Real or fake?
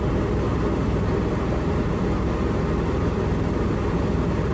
real